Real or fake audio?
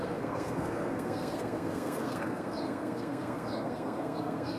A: fake